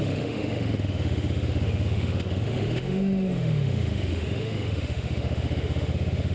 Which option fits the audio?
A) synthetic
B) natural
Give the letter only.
A